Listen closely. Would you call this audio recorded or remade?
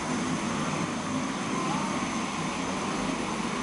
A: recorded